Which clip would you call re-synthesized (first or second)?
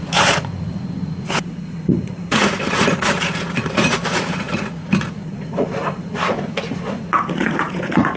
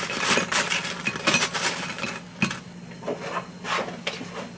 first